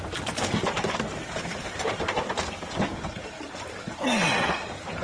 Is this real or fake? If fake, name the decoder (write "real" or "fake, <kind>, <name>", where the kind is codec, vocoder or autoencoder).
fake, vocoder, BigVGAN v2